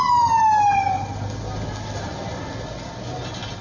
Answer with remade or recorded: recorded